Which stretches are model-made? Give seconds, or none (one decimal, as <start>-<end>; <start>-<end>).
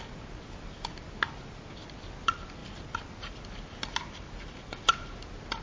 none